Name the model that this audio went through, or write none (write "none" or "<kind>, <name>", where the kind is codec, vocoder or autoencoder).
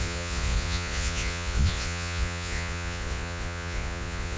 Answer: vocoder, Vocos